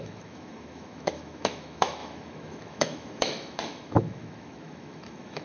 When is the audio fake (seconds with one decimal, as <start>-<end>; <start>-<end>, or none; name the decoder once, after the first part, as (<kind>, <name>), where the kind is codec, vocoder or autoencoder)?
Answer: 0.0-5.4 (autoencoder, DAC-VAE)